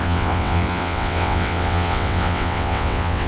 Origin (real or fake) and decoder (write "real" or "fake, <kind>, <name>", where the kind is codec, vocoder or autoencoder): fake, vocoder, WaveNeXt